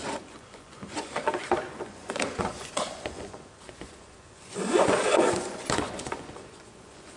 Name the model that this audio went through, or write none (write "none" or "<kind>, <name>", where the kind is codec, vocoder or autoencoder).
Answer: vocoder, Vocos